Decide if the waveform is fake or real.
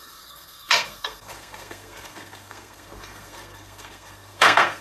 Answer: fake